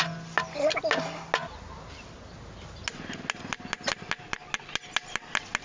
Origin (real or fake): real